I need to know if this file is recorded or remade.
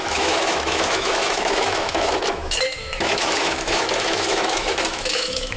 remade